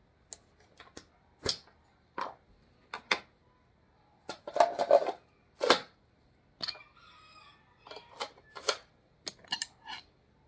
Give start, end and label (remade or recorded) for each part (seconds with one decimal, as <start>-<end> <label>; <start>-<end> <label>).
0.0-10.5 recorded